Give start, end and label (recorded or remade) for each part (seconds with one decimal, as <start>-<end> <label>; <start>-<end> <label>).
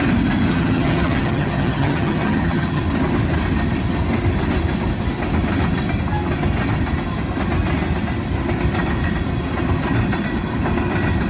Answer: 0.0-0.5 recorded; 0.5-2.8 remade; 2.8-11.3 recorded